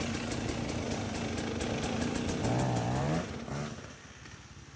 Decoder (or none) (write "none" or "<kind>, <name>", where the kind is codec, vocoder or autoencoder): none